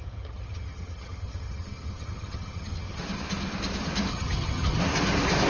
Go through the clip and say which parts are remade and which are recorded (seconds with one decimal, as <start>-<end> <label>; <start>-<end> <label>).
0.0-3.0 remade; 3.0-4.1 recorded; 4.1-4.8 remade; 4.8-5.5 recorded